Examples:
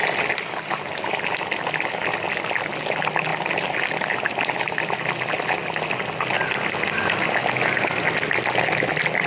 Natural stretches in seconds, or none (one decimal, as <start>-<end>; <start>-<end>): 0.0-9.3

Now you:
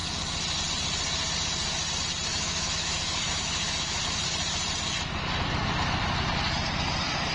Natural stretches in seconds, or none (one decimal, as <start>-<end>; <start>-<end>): 0.0-2.3; 4.0-7.3

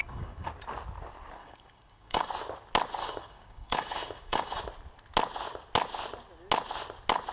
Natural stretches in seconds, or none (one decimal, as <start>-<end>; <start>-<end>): 0.5-1.4; 2.3-3.0; 4.6-7.3

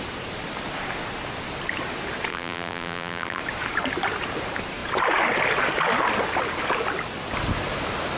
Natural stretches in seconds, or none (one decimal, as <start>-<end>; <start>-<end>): 0.0-2.3; 3.4-8.2

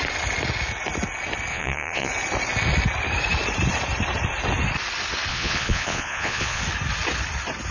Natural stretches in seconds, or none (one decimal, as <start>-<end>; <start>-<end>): 0.0-1.5; 2.1-5.3; 6.6-7.7